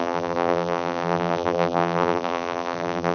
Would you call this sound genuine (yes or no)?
no